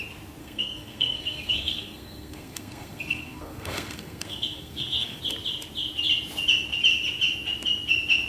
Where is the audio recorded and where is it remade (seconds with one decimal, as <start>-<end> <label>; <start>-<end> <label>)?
0.0-0.4 recorded; 0.4-5.2 remade; 5.2-8.3 recorded